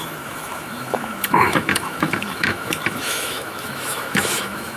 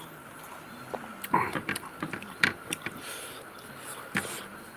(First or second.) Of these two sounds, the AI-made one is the first